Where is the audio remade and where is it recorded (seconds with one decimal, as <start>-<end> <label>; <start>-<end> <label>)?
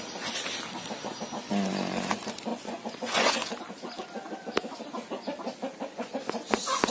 0.0-2.5 recorded; 2.5-3.5 remade; 3.5-5.8 recorded; 5.8-6.9 remade